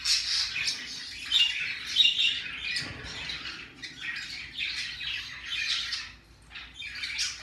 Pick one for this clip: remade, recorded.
recorded